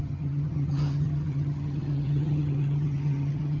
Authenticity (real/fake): fake